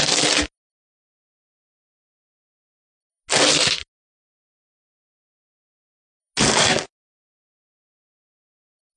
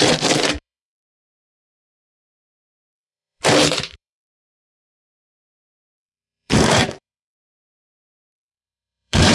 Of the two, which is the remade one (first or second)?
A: second